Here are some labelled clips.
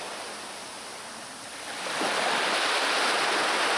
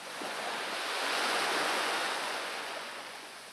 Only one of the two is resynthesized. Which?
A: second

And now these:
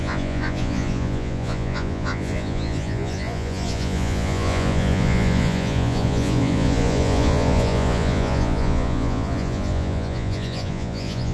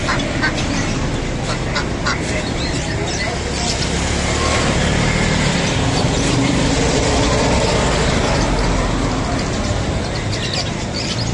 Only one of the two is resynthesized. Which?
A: first